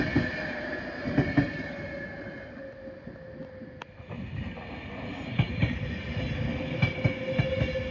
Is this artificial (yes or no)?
no